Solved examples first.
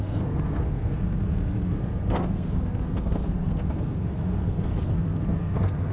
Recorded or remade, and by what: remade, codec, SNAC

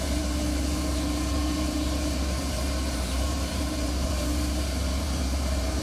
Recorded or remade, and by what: remade, vocoder, BigVGAN v2